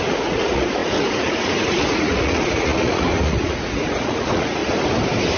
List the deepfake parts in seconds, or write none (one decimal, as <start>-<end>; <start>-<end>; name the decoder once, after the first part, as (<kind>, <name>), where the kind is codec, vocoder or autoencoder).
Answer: 0.0-4.6 (vocoder, Vocos)